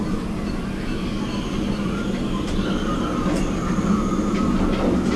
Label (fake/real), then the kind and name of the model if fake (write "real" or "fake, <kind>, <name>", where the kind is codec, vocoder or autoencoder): real